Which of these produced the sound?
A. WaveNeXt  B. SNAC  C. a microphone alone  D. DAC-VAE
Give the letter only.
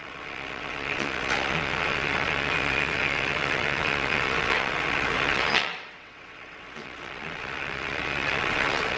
A